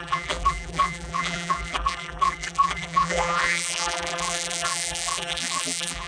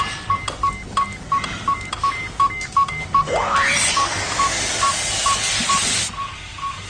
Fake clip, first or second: first